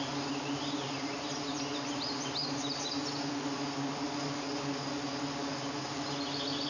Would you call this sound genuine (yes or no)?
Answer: yes